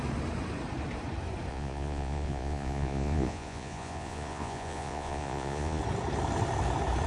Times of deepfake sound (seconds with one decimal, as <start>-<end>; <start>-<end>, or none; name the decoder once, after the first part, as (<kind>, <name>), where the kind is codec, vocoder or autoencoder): 1.5-5.8 (vocoder, Vocos)